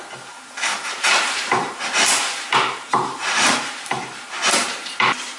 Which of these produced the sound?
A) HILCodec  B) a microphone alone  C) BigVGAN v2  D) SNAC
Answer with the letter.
C